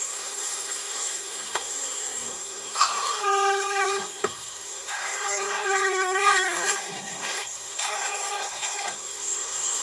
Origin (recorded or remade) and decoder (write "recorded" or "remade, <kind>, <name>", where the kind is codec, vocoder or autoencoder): remade, codec, SNAC